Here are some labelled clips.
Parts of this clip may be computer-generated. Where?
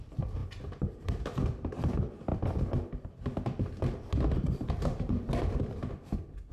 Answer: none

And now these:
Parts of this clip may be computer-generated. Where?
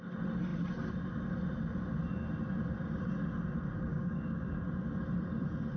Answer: 3.9-4.5 (codec, DAC)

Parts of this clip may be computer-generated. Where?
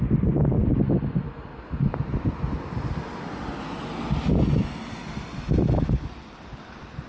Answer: none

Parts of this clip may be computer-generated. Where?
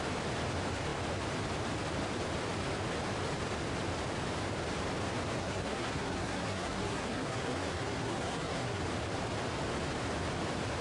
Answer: 5.4-8.8 (codec, SNAC)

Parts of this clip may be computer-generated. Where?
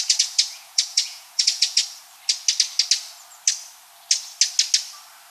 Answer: 0.0-1.8 (vocoder, Vocos)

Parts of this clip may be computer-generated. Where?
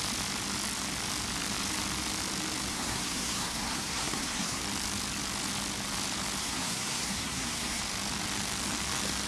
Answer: 2.7-4.6 (codec, SNAC); 6.4-7.8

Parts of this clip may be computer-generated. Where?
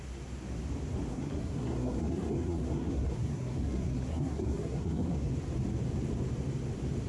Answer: 1.1-5.3 (codec, SNAC)